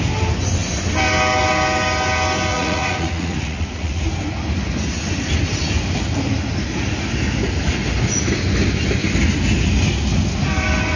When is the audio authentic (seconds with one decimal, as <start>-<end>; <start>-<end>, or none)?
0.0-2.5; 4.0-11.0